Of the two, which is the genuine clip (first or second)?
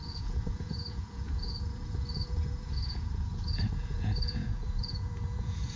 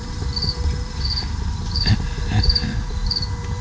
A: second